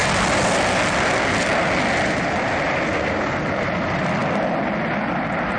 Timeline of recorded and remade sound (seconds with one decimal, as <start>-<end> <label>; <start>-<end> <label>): 0.0-5.6 recorded

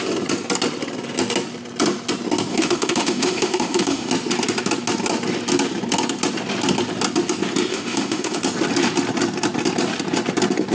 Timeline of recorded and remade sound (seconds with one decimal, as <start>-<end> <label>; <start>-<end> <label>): 0.0-2.5 recorded; 2.5-4.1 remade; 4.1-7.7 recorded; 7.7-8.4 remade; 8.4-10.7 recorded

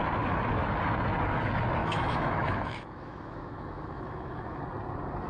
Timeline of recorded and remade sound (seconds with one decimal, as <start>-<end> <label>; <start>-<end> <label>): 0.0-1.8 recorded; 1.8-4.6 remade; 4.6-5.3 recorded

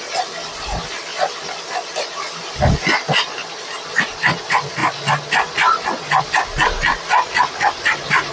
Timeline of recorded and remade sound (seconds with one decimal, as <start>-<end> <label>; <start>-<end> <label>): 0.0-8.3 recorded

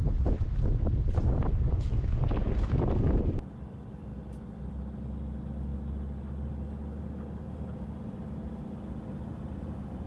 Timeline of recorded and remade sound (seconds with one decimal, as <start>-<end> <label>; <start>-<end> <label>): 0.0-10.1 recorded

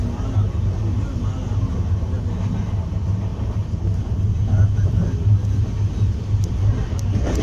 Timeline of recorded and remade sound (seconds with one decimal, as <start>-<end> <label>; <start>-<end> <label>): 0.0-7.4 recorded

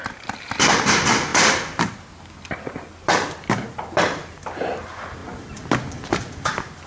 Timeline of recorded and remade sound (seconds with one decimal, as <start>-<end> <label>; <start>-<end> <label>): 0.0-6.9 recorded